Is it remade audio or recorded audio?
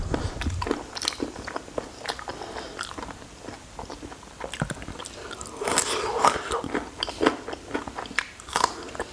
recorded